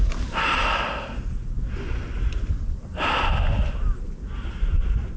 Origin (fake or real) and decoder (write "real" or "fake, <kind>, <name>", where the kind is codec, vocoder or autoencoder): real